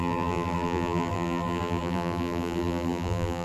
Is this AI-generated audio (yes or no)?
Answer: yes